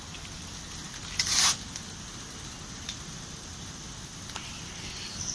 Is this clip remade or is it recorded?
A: recorded